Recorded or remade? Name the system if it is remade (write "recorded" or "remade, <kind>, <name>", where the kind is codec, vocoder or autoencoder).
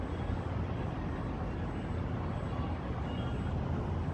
recorded